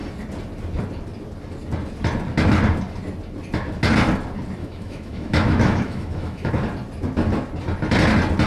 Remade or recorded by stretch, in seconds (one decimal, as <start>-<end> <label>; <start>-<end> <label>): 0.0-4.6 recorded; 4.6-6.5 remade; 6.5-8.5 recorded